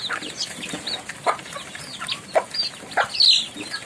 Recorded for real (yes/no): yes